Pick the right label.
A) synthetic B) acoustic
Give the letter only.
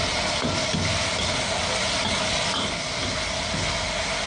B